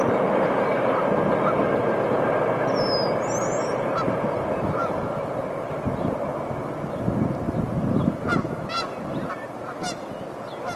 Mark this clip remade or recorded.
recorded